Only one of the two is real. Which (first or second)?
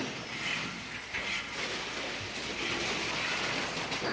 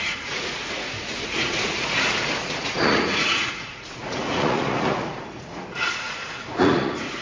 first